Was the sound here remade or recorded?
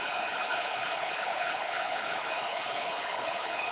remade